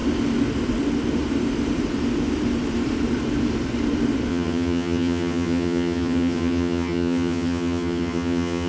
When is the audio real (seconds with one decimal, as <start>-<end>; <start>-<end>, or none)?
0.0-4.3